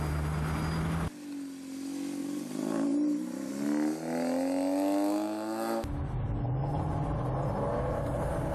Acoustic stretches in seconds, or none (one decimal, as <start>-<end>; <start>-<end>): 0.0-2.2; 3.5-8.5